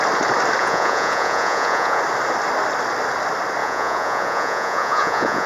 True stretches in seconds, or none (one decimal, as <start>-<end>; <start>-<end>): 0.0-0.6; 2.0-3.6